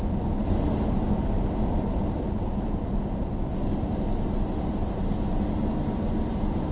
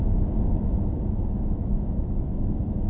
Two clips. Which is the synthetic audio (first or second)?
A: second